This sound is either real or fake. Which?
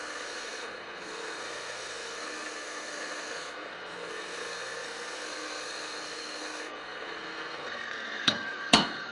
fake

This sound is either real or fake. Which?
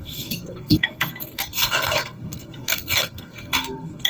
fake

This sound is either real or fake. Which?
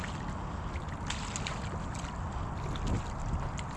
real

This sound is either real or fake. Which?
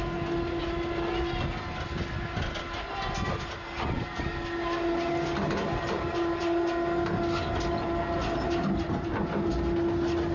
real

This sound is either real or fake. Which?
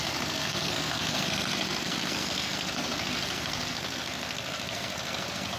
fake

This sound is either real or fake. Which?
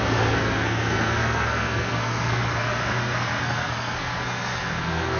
fake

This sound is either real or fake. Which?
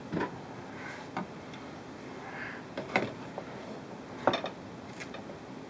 real